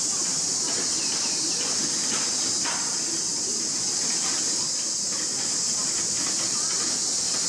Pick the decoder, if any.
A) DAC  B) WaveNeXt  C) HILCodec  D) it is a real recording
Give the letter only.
D